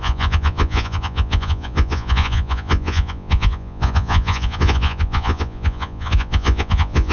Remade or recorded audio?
remade